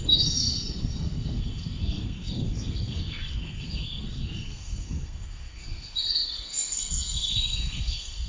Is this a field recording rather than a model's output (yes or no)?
no